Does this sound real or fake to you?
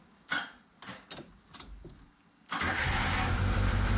real